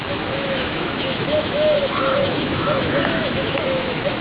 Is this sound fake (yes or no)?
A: yes